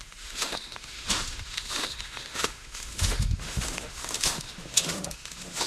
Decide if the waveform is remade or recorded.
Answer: remade